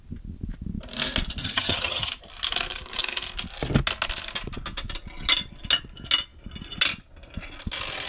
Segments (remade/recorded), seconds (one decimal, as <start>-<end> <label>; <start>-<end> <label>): 0.0-1.4 recorded; 1.4-2.1 remade; 2.1-8.1 recorded